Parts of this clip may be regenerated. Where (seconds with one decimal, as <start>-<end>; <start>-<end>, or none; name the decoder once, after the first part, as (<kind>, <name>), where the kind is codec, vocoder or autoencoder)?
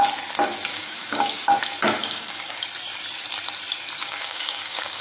0.7-1.6 (codec, DAC); 2.0-2.6; 4.0-5.0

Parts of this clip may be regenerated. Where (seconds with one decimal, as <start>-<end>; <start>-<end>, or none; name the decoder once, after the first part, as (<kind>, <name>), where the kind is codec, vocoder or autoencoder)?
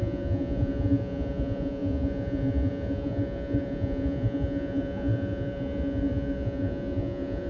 0.0-7.5 (vocoder, Vocos)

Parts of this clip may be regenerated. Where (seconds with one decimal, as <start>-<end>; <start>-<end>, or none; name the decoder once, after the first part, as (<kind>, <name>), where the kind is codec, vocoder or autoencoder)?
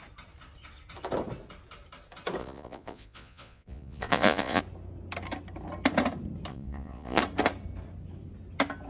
2.4-4.6 (vocoder, Vocos); 6.5-7.2